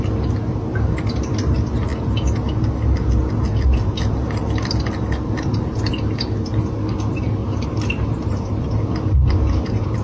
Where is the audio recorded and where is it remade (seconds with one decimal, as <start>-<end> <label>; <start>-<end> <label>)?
0.0-7.4 recorded; 7.4-8.6 remade; 8.6-10.0 recorded